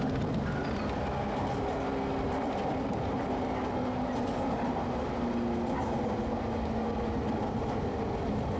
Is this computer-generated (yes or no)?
no